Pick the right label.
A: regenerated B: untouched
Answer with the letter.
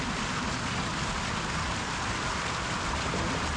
A